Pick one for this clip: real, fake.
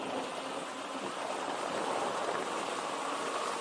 real